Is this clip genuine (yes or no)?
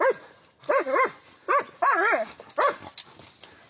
yes